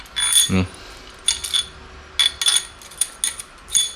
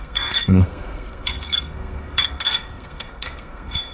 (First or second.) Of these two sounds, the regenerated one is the second